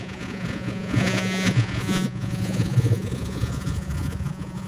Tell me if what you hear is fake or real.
fake